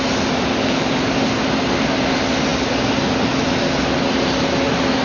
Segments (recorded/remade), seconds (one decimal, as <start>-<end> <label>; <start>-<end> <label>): 0.0-5.0 recorded